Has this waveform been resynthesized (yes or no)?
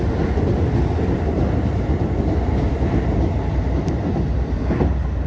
yes